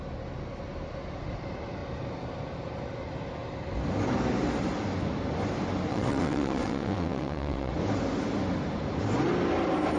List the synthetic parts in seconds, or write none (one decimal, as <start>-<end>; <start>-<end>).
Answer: 5.9-7.7